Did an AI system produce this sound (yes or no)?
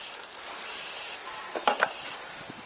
no